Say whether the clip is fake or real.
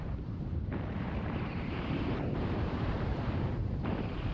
fake